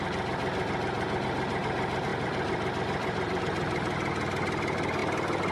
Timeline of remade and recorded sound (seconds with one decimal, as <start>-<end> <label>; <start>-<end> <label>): 0.0-2.1 recorded; 2.1-3.4 remade; 3.4-5.5 recorded